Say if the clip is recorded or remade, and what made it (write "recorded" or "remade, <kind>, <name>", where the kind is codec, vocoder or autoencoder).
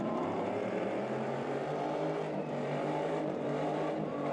remade, vocoder, BigVGAN v2